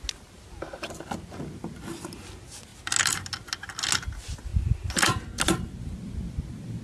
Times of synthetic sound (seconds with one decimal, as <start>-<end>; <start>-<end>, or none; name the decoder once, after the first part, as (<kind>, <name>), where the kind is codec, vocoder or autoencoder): none